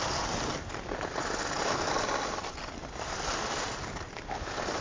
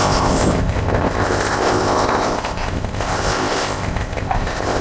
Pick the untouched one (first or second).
first